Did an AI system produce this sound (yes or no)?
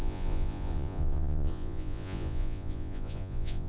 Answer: yes